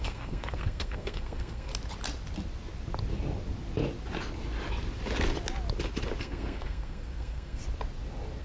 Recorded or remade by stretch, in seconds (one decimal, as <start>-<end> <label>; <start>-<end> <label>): 0.0-1.7 remade; 1.7-6.2 recorded; 6.2-7.6 remade; 7.6-8.4 recorded